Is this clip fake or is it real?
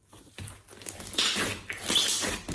real